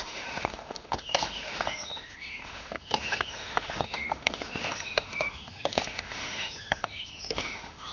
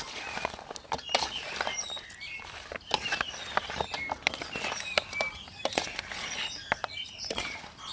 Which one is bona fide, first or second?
second